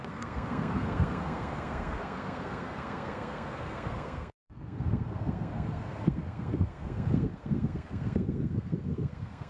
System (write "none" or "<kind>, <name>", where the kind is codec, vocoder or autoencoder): codec, SNAC